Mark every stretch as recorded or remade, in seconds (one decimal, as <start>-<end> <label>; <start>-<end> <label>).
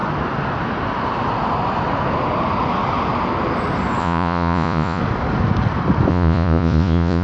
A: 0.0-4.0 recorded; 4.0-5.0 remade; 5.0-6.1 recorded; 6.1-7.2 remade